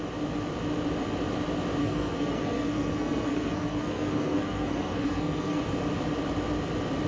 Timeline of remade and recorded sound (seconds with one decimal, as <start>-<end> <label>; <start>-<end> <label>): 0.0-1.8 recorded; 1.8-5.6 remade; 5.6-7.1 recorded